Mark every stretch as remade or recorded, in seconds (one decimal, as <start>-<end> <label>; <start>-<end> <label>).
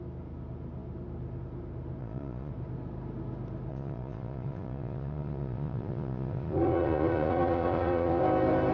0.0-2.0 recorded; 2.0-2.5 remade; 2.5-3.7 recorded; 3.7-8.2 remade; 8.2-8.7 recorded